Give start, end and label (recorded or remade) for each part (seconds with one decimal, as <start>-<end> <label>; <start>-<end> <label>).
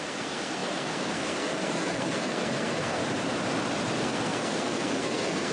0.0-3.0 remade; 3.0-4.0 recorded; 4.0-5.5 remade